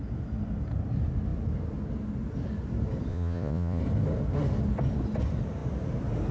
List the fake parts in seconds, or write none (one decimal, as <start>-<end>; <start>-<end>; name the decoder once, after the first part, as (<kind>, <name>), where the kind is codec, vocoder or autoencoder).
3.1-3.8 (vocoder, Vocos)